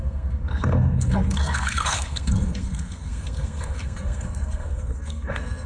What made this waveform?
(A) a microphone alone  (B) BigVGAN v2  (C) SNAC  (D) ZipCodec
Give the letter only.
C